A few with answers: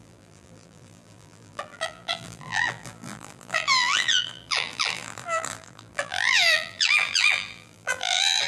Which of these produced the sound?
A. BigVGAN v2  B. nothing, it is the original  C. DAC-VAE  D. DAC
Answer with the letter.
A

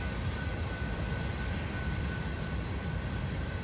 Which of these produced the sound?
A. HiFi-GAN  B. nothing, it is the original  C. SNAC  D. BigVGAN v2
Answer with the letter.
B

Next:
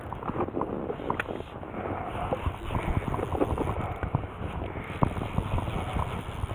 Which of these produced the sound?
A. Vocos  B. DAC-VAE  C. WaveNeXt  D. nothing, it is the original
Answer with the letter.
D